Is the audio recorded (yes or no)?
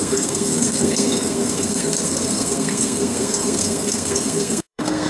no